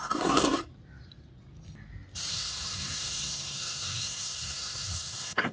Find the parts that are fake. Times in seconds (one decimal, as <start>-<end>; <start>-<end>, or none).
0.0-0.7; 2.3-5.5